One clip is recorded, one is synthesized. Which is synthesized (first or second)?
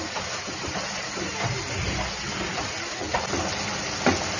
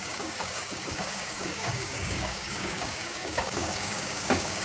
second